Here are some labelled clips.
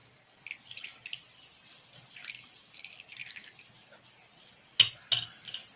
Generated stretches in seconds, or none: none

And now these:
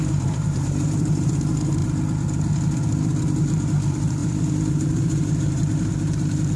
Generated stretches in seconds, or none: 0.0-1.8 (vocoder, BigVGAN v2); 3.3-6.6

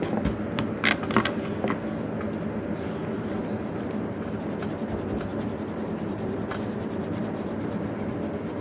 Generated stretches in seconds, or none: 5.3-8.0 (vocoder, BigVGAN v2)

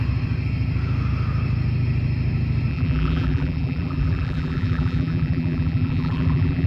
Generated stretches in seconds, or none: 2.7-6.7 (vocoder, BigVGAN v2)